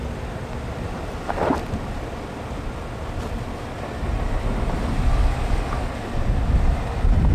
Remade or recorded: recorded